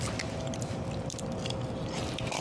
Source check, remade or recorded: remade